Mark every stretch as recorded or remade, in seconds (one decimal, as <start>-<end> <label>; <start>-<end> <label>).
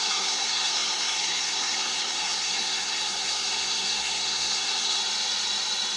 0.0-5.0 remade; 5.0-6.0 recorded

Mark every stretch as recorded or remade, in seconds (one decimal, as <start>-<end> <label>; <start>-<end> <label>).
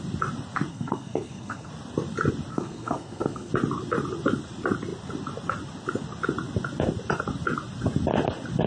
0.0-0.7 recorded; 0.7-1.7 remade; 1.7-2.5 recorded; 2.5-3.5 remade; 3.5-8.7 recorded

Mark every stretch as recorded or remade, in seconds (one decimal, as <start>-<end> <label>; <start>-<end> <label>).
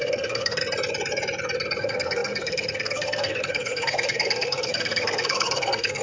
0.0-0.6 remade; 0.6-1.8 recorded; 1.8-6.0 remade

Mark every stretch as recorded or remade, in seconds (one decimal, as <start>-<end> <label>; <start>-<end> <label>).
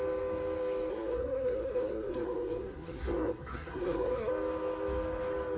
0.0-0.9 recorded; 0.9-4.3 remade; 4.3-5.6 recorded